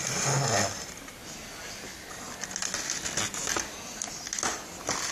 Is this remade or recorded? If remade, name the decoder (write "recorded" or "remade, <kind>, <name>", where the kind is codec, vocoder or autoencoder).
recorded